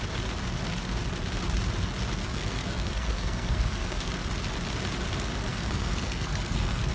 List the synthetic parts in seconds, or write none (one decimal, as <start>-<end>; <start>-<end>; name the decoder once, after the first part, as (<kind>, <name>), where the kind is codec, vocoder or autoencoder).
2.2-4.1 (codec, SNAC); 5.5-6.9